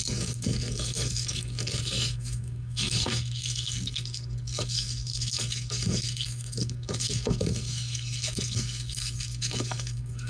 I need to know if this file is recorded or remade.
remade